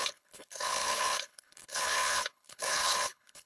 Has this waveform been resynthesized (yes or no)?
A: yes